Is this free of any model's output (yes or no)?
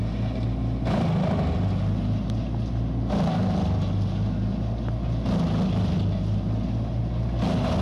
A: yes